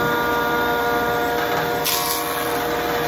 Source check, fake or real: real